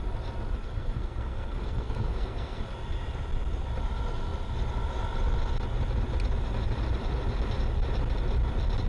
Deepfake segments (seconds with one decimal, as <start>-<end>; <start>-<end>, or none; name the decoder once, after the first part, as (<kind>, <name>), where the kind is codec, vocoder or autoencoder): 0.6-2.6 (codec, SNAC)